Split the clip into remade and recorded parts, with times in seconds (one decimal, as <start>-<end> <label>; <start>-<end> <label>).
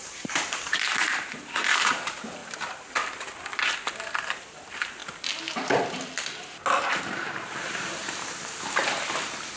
0.0-2.4 remade; 2.4-4.2 recorded; 4.2-5.0 remade; 5.0-7.0 recorded; 7.0-9.6 remade